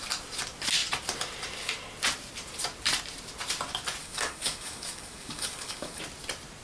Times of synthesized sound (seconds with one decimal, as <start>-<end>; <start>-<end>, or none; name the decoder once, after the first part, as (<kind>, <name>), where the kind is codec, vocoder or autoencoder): 4.0-6.0 (codec, DAC)